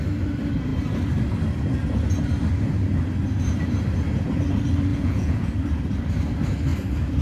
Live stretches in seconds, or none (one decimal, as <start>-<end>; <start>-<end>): 0.0-4.9; 5.5-7.2